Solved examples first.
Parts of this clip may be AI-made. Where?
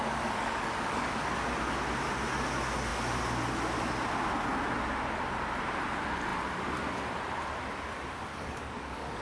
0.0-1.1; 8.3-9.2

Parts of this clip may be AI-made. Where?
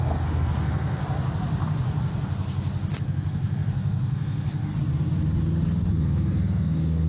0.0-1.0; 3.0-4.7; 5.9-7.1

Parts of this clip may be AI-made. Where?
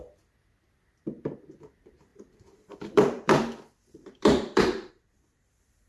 2.1-4.9